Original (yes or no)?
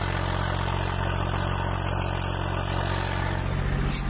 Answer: yes